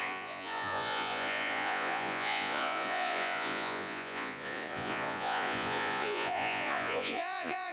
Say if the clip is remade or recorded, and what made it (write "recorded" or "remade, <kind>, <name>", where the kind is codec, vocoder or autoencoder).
remade, vocoder, Vocos